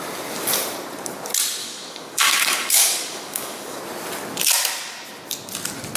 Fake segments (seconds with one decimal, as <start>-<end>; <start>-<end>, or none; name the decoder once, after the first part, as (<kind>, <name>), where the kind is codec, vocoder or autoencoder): 1.6-3.8 (codec, DAC)

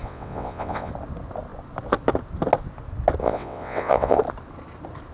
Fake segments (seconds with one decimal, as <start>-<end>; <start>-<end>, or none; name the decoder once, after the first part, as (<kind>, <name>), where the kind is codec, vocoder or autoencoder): 0.0-0.9 (vocoder, WaveNeXt); 3.2-4.2